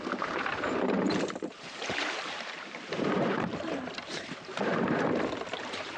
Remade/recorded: remade